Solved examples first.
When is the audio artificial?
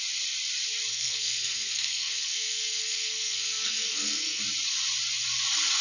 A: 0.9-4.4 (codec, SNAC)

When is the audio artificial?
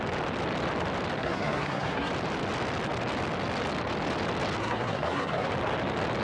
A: 1.2-2.1 (codec, SNAC); 4.6-5.5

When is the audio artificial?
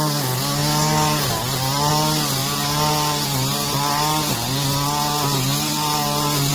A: none